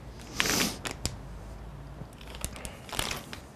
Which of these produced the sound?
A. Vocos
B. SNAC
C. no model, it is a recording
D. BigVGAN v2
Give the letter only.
C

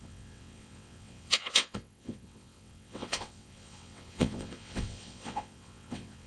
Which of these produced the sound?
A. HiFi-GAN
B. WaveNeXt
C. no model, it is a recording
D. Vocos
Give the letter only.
B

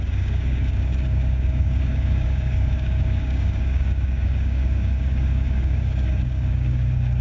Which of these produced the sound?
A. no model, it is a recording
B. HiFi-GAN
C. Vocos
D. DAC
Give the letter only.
D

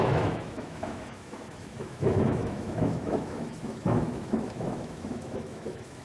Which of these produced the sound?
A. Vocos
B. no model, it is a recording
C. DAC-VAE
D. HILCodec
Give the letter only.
C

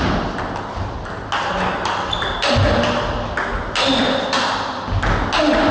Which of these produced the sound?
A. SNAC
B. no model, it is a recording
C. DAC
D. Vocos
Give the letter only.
B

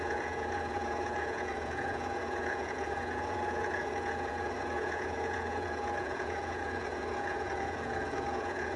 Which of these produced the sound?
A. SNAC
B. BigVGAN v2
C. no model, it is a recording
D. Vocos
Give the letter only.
D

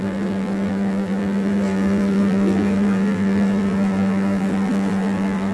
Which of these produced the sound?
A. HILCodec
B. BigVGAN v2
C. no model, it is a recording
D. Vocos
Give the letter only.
B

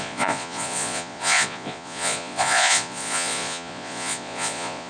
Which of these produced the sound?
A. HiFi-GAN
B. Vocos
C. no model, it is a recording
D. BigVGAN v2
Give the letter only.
B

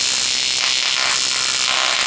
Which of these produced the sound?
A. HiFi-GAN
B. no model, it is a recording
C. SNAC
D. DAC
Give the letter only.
B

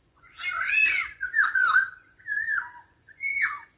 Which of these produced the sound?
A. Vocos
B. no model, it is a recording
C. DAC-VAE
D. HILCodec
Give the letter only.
A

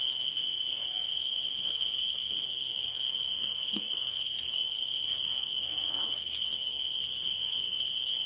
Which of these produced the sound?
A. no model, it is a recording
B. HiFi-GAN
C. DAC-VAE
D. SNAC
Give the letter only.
D